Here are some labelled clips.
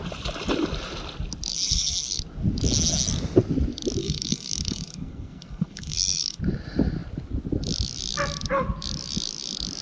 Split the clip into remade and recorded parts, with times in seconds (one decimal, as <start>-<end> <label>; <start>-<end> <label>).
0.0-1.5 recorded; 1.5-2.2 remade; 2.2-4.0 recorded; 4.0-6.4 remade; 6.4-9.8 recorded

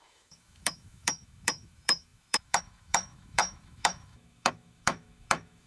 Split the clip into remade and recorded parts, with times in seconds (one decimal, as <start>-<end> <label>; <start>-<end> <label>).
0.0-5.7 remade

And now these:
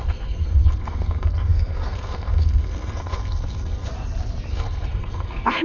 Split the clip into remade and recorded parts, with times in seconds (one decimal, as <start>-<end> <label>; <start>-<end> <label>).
0.0-3.9 remade; 3.9-4.5 recorded; 4.5-5.6 remade